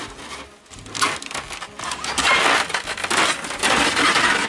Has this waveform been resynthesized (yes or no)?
no